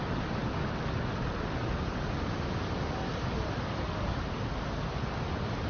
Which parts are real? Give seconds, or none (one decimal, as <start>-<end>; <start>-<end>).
0.0-5.7